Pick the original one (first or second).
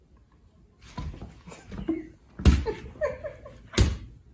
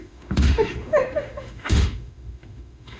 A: first